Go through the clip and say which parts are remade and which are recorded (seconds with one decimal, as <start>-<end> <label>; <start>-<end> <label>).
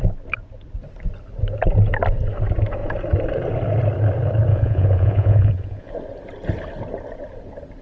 0.0-4.5 recorded; 4.5-5.9 remade; 5.9-7.8 recorded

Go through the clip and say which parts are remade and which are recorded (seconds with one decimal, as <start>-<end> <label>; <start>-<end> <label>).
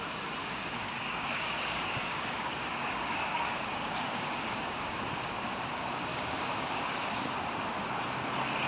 0.0-0.4 recorded; 0.4-5.4 remade; 5.4-6.1 recorded; 6.1-6.8 remade; 6.8-8.7 recorded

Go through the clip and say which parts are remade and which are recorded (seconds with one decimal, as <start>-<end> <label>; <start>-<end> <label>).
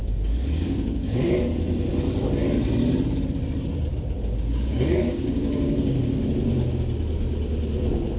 0.0-1.3 remade; 1.3-3.9 recorded; 3.9-6.0 remade; 6.0-8.2 recorded